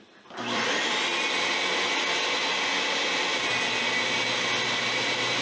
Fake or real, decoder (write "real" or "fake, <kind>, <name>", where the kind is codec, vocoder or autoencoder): real